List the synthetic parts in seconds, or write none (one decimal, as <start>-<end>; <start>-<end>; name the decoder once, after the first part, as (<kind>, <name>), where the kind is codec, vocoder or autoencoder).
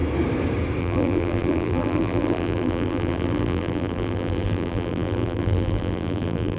0.8-6.6 (vocoder, BigVGAN v2)